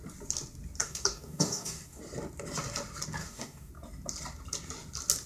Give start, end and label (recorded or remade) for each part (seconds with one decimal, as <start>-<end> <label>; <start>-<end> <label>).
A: 0.0-0.8 recorded; 0.8-2.0 remade; 2.0-3.2 recorded; 3.2-3.7 remade; 3.7-5.3 recorded